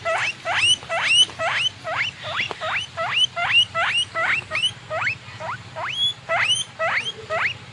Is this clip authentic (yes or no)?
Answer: yes